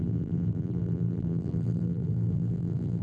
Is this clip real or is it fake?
fake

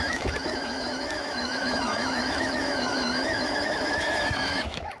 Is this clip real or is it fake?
fake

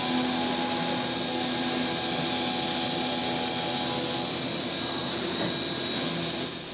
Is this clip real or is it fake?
real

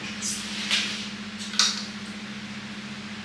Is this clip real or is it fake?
real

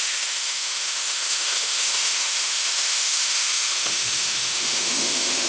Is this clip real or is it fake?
fake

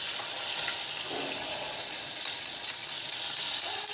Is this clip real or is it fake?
real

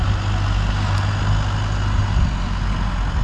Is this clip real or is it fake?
real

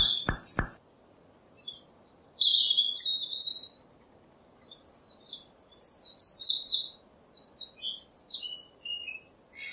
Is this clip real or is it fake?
real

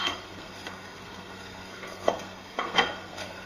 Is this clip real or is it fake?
fake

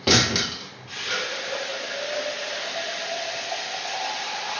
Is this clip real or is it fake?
real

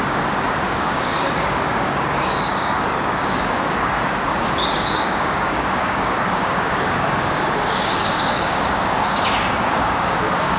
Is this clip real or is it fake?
fake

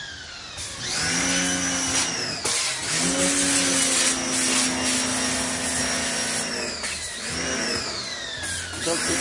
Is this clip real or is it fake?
real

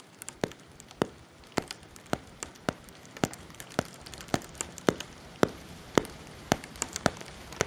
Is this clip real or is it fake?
fake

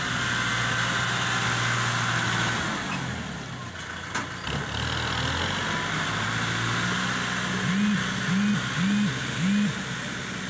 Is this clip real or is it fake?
real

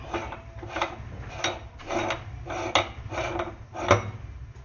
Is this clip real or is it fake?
real